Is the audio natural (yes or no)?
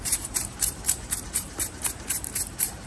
no